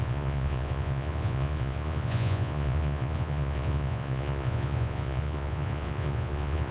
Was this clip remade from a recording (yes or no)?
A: yes